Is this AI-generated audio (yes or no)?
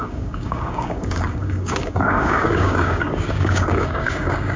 yes